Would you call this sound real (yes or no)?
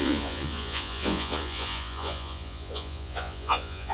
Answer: no